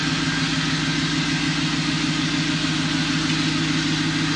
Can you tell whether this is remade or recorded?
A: recorded